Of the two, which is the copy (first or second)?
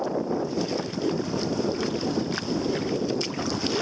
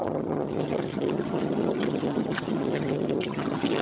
second